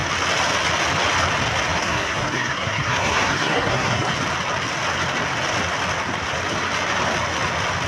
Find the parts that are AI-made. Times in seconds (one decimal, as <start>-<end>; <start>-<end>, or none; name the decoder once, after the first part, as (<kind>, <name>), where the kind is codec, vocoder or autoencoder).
1.8-4.1 (codec, SNAC)